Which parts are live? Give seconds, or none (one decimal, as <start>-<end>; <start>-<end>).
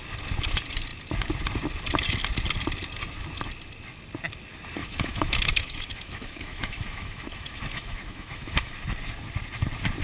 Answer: 0.0-4.8; 8.7-10.0